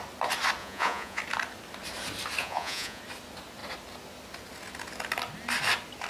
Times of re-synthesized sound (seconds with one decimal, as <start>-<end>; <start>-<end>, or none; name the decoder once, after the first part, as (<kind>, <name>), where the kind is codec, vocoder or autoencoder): 0.6-1.2 (vocoder, Vocos); 2.4-3.0